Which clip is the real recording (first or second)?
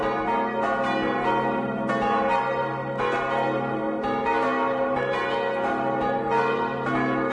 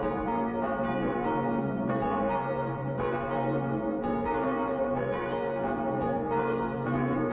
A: first